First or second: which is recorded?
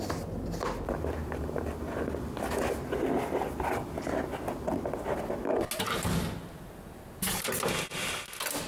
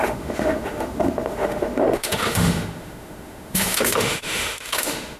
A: first